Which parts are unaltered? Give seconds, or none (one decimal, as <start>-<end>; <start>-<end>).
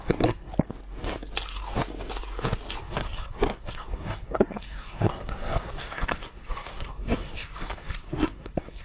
0.5-2.8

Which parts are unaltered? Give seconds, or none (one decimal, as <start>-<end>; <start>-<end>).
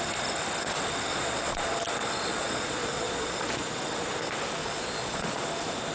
0.0-1.1; 1.8-2.3; 3.7-4.6; 5.5-5.9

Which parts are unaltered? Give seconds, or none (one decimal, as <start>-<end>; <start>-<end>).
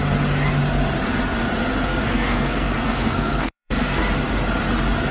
0.0-1.9; 4.0-5.1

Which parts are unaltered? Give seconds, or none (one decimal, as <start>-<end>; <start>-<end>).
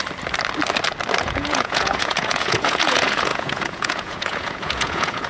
0.0-1.2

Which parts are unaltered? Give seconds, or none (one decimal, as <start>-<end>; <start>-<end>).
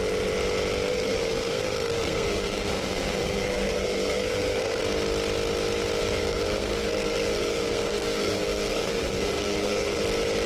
0.0-0.9; 4.8-6.2; 10.0-10.5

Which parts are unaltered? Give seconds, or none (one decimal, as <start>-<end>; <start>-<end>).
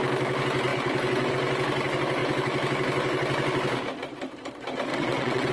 0.0-4.9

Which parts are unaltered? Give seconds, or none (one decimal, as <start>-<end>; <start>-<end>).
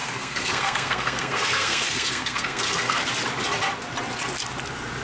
3.0-5.0